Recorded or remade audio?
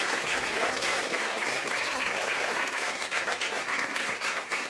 remade